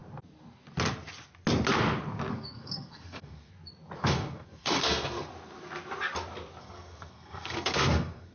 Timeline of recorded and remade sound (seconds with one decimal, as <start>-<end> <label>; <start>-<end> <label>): 0.0-2.3 recorded; 2.3-3.5 remade; 3.5-4.0 recorded; 4.0-5.3 remade; 5.3-6.6 recorded; 6.6-8.3 remade